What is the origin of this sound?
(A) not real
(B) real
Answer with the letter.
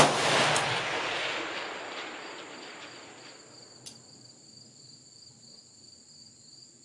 B